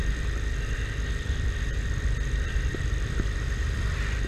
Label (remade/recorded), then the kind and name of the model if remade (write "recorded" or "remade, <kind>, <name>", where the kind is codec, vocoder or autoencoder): remade, vocoder, BigVGAN v2